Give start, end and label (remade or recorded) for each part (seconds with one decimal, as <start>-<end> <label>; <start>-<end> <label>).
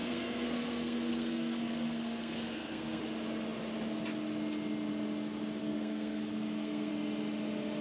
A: 0.0-3.0 remade; 3.0-5.6 recorded; 5.6-6.9 remade; 6.9-7.8 recorded